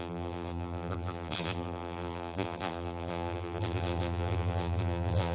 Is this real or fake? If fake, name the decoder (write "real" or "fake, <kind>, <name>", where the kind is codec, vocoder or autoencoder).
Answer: fake, vocoder, BigVGAN v2